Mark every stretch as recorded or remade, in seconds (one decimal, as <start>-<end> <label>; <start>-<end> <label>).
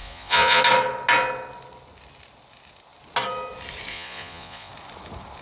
0.0-0.6 remade; 0.6-3.9 recorded; 3.9-4.7 remade; 4.7-5.4 recorded